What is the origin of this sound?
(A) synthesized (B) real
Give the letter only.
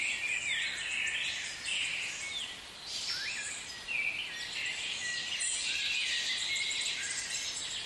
B